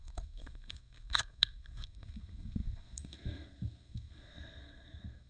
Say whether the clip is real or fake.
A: fake